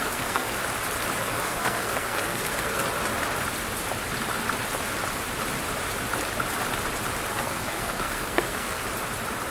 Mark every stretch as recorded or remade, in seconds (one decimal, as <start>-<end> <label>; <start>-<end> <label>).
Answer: 0.0-0.6 remade; 0.6-1.2 recorded; 1.2-2.8 remade; 2.8-7.3 recorded; 7.3-8.8 remade; 8.8-9.5 recorded